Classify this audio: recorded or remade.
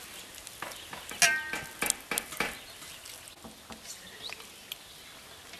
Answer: recorded